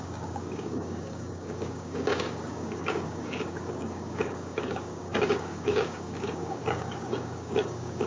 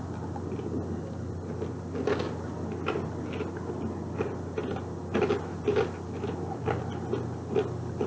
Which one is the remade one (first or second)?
first